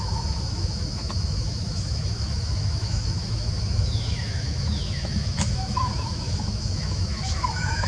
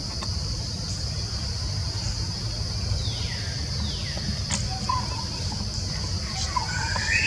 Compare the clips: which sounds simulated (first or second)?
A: first